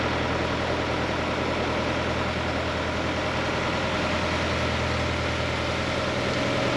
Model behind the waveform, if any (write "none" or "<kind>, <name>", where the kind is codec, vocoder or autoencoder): none